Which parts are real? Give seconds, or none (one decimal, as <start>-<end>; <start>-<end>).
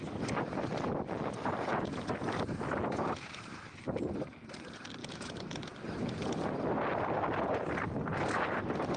0.0-5.0; 5.6-9.0